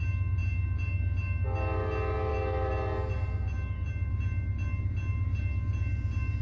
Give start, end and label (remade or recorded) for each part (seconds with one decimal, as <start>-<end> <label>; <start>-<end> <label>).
0.0-6.4 recorded